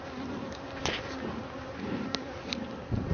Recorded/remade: recorded